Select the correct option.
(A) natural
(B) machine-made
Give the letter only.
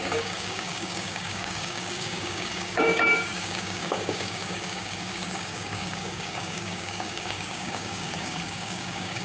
B